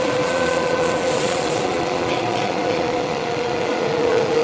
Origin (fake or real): fake